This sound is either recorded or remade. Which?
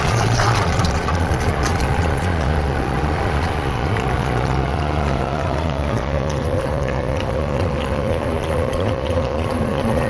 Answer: remade